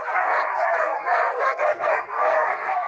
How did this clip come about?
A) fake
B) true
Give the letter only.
A